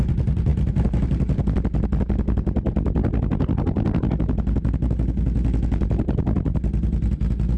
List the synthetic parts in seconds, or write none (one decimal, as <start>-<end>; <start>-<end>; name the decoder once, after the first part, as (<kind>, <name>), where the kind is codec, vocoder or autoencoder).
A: none